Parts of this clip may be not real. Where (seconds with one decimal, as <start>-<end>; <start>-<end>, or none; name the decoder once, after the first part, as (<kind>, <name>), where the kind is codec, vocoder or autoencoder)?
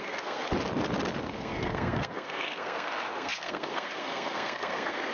0.0-0.4 (codec, SNAC); 1.2-5.1